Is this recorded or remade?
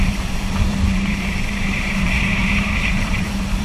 remade